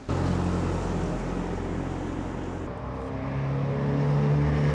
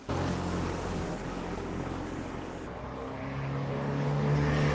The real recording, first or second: first